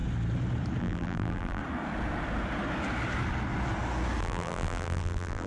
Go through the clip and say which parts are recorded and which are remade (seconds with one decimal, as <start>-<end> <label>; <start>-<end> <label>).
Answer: 0.0-0.8 recorded; 0.8-1.6 remade; 1.6-4.2 recorded; 4.2-5.5 remade